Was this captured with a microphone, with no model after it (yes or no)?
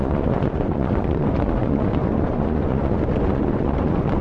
no